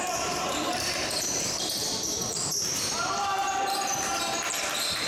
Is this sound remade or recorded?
remade